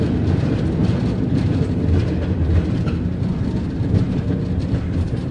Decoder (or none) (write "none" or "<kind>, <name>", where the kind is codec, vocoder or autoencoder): none